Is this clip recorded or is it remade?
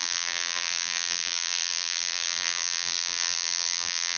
remade